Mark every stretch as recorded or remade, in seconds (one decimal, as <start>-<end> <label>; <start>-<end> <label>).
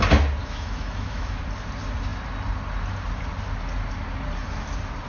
0.0-0.4 recorded; 0.4-1.4 remade; 1.4-5.1 recorded